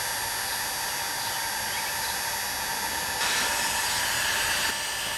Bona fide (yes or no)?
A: yes